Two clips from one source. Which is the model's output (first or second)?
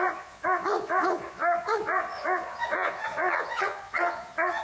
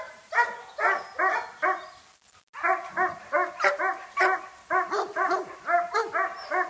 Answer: first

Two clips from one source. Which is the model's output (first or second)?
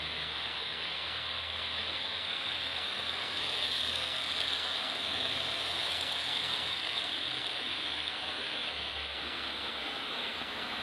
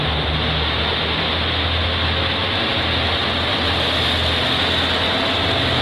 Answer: first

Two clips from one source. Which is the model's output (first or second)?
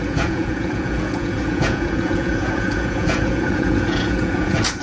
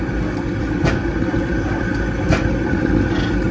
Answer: first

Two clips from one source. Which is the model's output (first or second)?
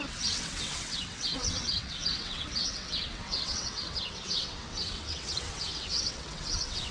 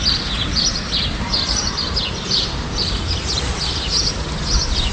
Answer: first